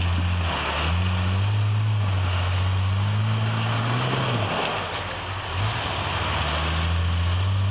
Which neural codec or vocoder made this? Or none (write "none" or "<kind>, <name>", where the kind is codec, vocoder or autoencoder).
none